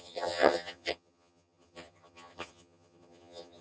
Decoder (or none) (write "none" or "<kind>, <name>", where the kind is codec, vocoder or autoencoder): vocoder, HiFi-GAN